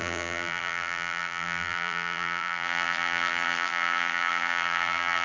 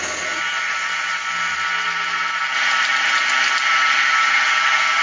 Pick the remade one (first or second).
first